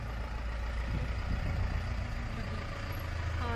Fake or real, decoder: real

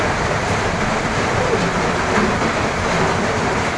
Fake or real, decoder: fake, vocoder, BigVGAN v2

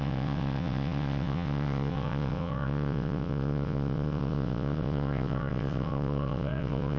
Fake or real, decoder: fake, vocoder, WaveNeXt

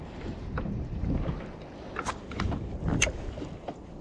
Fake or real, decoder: real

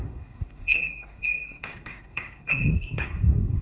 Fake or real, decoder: fake, codec, SNAC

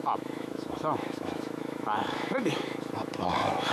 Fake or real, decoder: fake, autoencoder, DAC-VAE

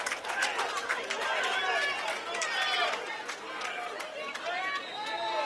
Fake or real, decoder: real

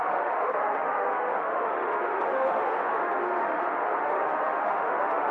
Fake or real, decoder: fake, autoencoder, DAC-VAE